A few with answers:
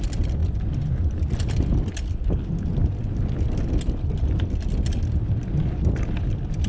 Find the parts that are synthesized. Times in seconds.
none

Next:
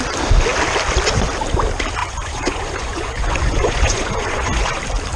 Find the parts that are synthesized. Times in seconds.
2.0-4.8 (vocoder, Vocos)

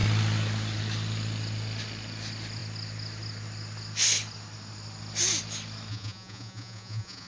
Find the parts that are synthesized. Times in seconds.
5.9-7.3 (vocoder, Vocos)

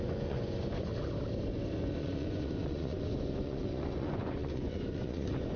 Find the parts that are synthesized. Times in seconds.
0.0-0.9 (vocoder, Vocos); 1.9-5.6